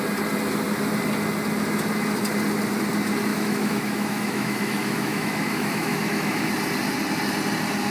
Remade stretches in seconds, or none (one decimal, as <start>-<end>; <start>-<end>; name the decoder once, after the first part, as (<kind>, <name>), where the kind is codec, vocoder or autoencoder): 3.3-6.5 (autoencoder, DAC-VAE)